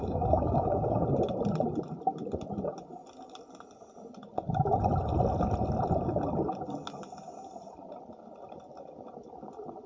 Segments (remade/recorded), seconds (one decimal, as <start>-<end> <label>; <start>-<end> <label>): 0.0-1.0 remade; 1.0-9.9 recorded